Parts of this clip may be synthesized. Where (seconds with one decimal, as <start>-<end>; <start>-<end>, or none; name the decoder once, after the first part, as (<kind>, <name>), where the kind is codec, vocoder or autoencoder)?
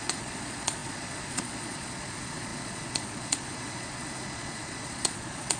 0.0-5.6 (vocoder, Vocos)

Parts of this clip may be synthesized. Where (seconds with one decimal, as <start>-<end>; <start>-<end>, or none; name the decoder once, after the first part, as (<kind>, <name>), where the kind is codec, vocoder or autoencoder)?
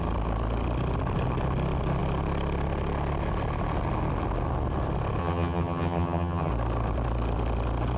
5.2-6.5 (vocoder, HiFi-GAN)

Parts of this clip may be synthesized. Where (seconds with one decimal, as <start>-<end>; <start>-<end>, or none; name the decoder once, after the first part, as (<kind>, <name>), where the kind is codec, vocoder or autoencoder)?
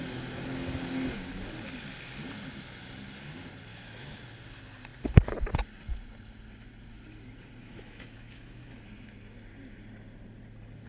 3.7-4.2 (autoencoder, DAC-VAE); 7.6-8.7